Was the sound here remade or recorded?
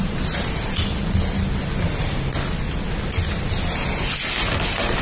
recorded